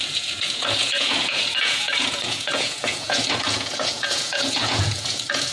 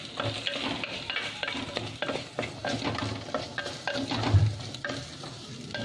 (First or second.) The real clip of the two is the second